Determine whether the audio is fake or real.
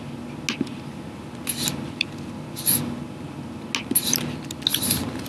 real